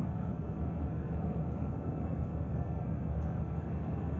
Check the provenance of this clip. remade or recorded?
remade